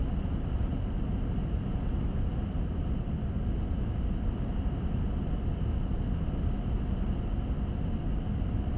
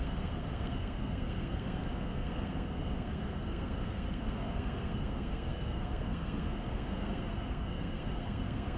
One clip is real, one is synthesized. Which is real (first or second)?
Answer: first